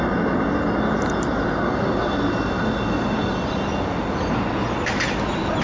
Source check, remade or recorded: recorded